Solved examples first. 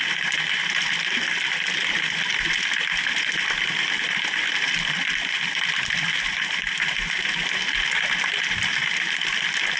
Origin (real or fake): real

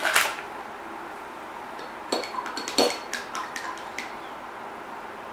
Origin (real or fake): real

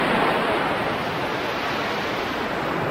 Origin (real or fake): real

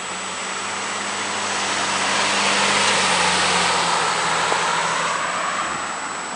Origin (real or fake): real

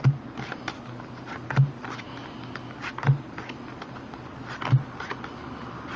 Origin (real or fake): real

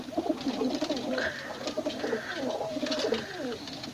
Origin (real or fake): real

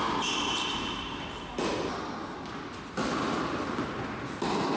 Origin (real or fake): real